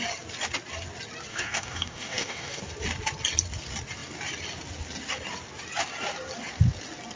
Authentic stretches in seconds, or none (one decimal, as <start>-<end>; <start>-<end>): 0.0-1.3; 2.6-7.2